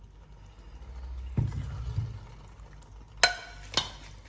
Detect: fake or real real